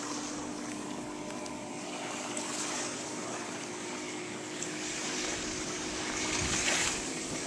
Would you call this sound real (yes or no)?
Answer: no